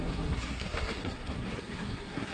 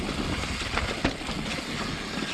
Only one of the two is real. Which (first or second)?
second